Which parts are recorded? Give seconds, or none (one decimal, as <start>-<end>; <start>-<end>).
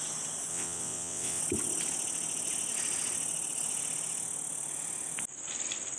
0.0-0.5; 1.4-6.0